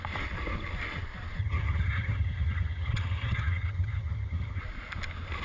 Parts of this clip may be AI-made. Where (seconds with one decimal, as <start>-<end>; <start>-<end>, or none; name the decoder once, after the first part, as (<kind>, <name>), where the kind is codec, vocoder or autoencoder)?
1.4-4.6 (vocoder, HiFi-GAN)